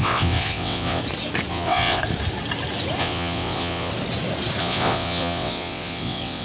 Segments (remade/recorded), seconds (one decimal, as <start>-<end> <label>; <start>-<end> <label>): 0.0-1.0 remade; 1.0-1.5 recorded; 1.5-2.0 remade; 2.0-3.0 recorded; 3.0-3.9 remade; 3.9-4.6 recorded; 4.6-6.4 remade